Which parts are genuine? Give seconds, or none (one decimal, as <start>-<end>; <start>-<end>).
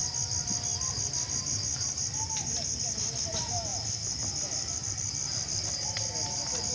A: 0.0-6.7